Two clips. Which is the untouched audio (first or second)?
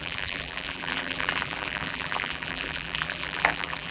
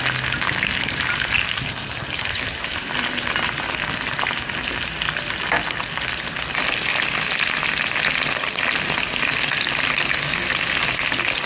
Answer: second